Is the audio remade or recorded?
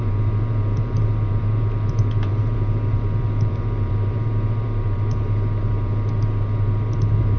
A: remade